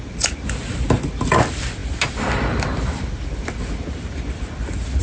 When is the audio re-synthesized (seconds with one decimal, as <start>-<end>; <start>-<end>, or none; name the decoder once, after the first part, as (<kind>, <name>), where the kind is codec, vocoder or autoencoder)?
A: none